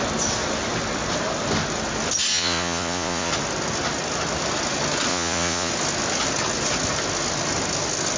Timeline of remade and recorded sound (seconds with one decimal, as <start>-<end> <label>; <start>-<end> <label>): 0.0-2.3 recorded; 2.3-3.3 remade; 3.3-5.1 recorded; 5.1-5.7 remade; 5.7-8.2 recorded